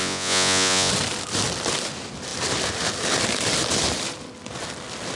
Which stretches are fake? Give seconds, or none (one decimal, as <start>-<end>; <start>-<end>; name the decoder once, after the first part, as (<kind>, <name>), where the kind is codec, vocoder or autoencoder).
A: 0.0-0.9 (vocoder, Vocos)